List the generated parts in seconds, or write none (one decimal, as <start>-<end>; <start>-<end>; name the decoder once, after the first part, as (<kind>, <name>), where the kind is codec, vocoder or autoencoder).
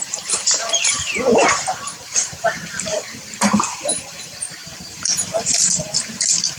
0.0-1.3 (vocoder, BigVGAN v2); 2.0-6.6